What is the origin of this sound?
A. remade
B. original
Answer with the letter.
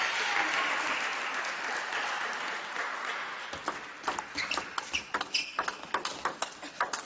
B